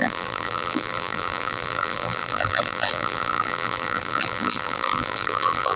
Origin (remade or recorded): remade